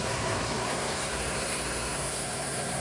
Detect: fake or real fake